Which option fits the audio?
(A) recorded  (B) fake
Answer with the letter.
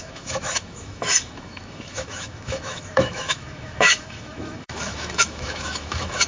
B